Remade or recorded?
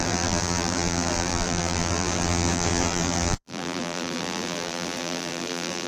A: remade